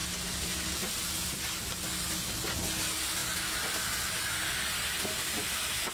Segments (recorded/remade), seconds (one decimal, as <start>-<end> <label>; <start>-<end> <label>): 0.0-5.9 recorded